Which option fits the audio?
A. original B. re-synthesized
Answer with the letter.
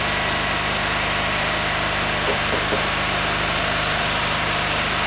B